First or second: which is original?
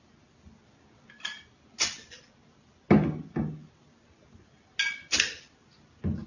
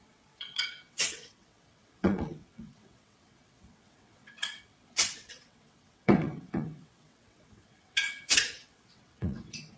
first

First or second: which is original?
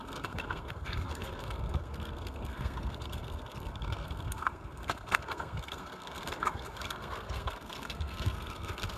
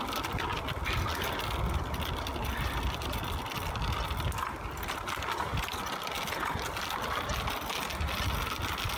second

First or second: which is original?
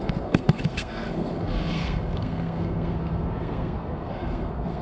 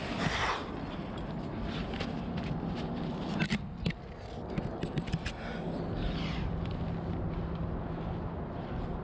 second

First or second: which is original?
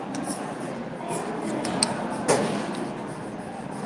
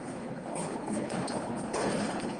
first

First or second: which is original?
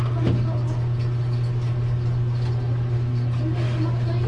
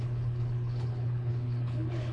first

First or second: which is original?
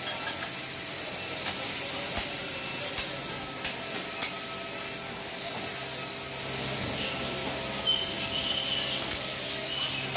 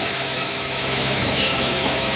first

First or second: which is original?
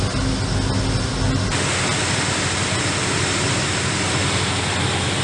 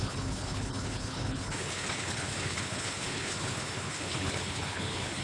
first